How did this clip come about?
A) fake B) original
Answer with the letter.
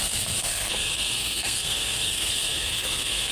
A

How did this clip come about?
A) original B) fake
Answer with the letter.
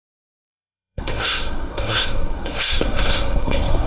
B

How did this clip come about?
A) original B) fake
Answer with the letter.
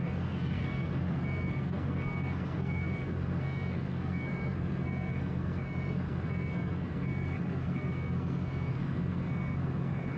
B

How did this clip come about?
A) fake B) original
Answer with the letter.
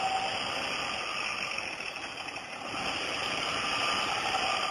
B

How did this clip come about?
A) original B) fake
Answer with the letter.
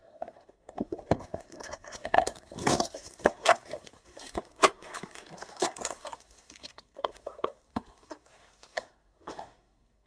B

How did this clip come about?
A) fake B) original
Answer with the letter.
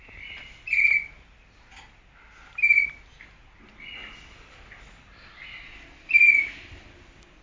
B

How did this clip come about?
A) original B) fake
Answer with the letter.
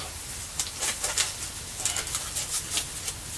A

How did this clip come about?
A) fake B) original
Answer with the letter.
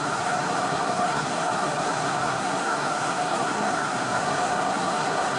A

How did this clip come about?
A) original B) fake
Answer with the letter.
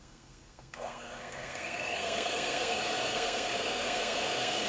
B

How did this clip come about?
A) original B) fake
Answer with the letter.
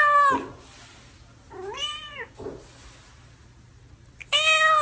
A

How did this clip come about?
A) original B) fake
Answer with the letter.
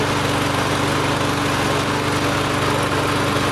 A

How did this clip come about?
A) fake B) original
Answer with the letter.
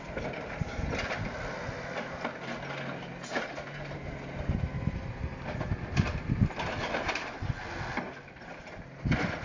B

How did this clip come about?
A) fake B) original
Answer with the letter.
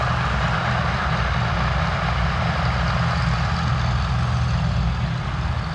B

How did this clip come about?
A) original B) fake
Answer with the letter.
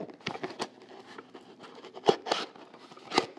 A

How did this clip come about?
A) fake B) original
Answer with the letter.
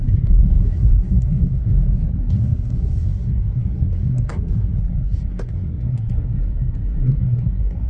A